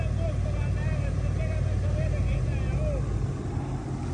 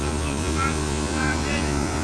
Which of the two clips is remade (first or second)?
second